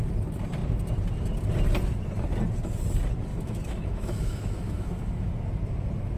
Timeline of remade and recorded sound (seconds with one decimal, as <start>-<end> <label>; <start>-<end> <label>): 0.0-3.3 recorded; 3.3-5.3 remade; 5.3-6.2 recorded